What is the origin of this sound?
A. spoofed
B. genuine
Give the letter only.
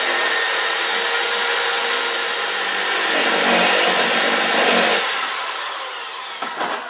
B